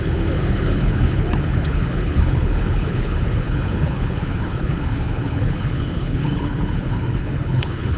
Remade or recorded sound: remade